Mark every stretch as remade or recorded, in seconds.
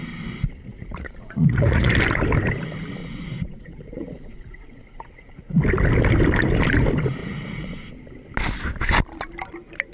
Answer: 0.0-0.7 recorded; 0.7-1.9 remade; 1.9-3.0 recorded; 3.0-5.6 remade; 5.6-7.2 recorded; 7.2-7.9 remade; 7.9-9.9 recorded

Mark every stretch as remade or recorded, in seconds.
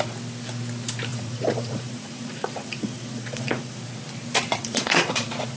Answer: 0.0-1.1 recorded; 1.1-3.8 remade; 3.8-4.6 recorded; 4.6-5.6 remade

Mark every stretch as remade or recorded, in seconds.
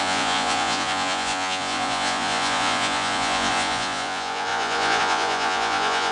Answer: 0.0-6.1 remade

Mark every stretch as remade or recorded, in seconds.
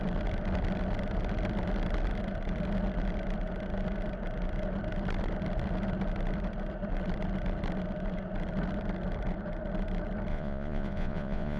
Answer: 0.0-10.3 recorded; 10.3-11.6 remade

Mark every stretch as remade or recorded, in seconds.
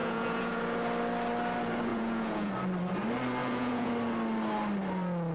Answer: 0.0-0.6 remade; 0.6-1.9 recorded; 1.9-2.5 remade; 2.5-3.4 recorded; 3.4-3.9 remade; 3.9-5.3 recorded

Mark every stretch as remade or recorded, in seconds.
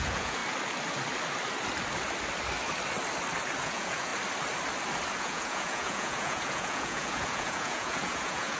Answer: 0.0-0.4 remade; 0.4-3.6 recorded; 3.6-4.1 remade; 4.1-5.2 recorded; 5.2-8.6 remade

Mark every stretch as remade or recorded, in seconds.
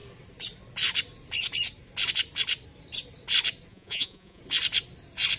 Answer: 0.0-3.7 recorded; 3.7-4.4 remade; 4.4-5.4 recorded